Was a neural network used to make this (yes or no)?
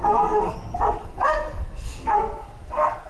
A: yes